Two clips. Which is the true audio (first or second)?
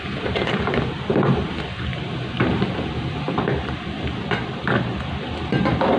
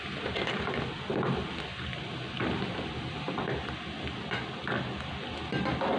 second